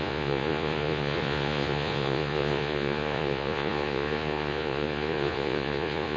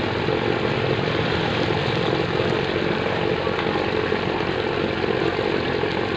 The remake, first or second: first